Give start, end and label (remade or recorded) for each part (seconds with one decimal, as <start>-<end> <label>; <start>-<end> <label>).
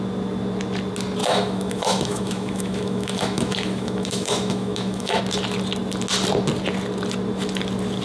0.0-1.2 recorded; 1.2-5.2 remade; 5.2-8.0 recorded